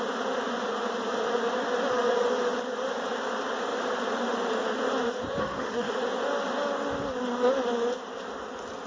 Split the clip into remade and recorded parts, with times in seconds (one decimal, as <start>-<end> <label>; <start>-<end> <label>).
0.0-5.4 recorded; 5.4-5.9 remade; 5.9-8.9 recorded